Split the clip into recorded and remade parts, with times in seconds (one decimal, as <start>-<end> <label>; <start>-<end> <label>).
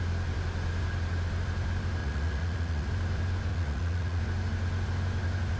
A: 0.0-2.0 recorded; 2.0-2.9 remade; 2.9-3.5 recorded; 3.5-4.2 remade; 4.2-5.6 recorded